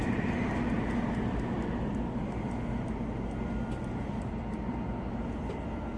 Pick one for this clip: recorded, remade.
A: recorded